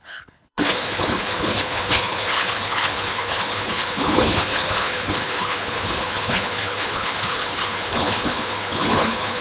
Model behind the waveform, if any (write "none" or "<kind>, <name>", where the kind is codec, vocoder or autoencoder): codec, HILCodec